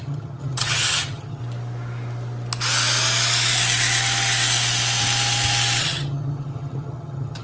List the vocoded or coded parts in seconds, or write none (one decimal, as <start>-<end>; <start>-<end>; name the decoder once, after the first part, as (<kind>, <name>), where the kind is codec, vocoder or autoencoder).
0.0-1.4 (vocoder, HiFi-GAN); 5.8-7.4